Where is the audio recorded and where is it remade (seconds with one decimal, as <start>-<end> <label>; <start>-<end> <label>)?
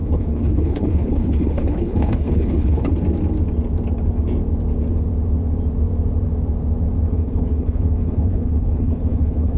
0.0-2.9 remade; 2.9-7.1 recorded; 7.1-9.6 remade